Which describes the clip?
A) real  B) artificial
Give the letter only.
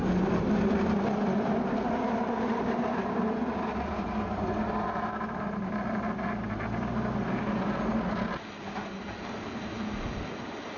A